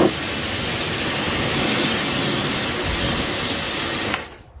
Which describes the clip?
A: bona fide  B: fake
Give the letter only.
A